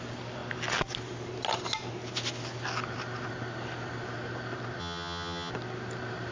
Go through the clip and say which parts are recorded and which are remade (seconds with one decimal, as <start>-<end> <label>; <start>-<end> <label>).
0.0-4.8 recorded; 4.8-5.5 remade; 5.5-6.3 recorded